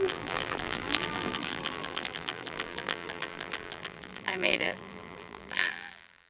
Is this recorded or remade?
remade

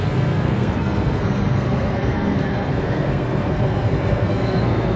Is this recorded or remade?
remade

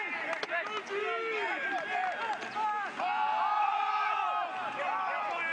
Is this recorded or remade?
recorded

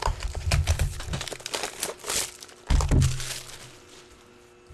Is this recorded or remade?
recorded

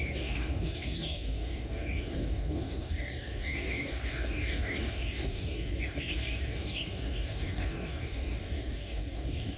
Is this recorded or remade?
remade